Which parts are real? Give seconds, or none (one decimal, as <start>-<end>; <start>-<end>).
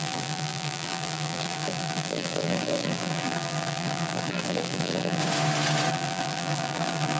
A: 5.2-5.9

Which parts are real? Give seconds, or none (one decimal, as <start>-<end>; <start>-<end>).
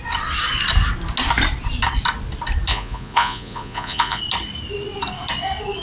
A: 0.0-2.7; 4.2-5.8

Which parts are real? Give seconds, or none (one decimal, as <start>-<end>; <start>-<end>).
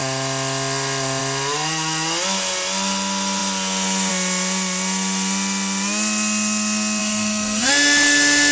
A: 0.0-7.0; 7.7-8.5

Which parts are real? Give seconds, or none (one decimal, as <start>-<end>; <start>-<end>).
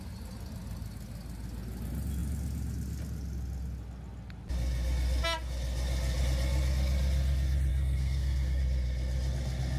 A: 0.0-7.7; 8.6-9.8